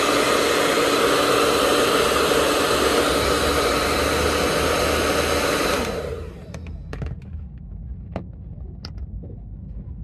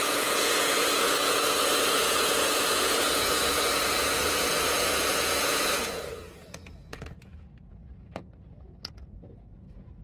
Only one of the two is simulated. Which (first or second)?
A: second